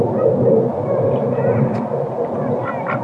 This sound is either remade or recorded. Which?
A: recorded